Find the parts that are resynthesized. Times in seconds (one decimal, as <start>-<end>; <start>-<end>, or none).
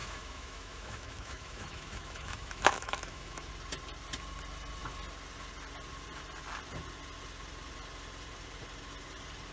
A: 0.0-3.5